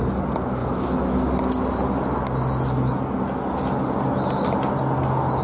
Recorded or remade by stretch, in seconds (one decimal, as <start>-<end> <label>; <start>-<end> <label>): 0.0-0.6 recorded; 0.6-1.3 remade; 1.3-5.4 recorded